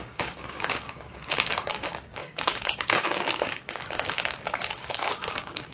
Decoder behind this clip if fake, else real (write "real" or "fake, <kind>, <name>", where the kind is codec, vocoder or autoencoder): fake, codec, DAC